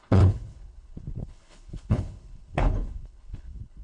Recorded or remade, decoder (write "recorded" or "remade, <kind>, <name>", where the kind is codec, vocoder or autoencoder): remade, codec, HILCodec